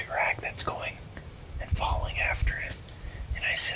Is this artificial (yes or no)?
no